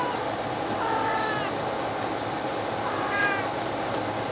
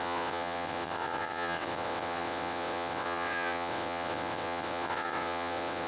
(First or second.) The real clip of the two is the first